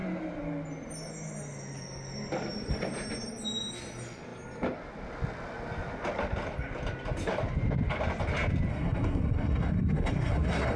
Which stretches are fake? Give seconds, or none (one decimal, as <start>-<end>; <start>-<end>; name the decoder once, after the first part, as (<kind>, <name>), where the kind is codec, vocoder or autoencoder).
8.7-10.8 (codec, SNAC)